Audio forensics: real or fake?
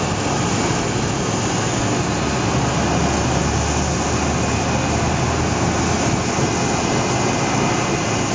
real